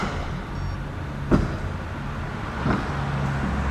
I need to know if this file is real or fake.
real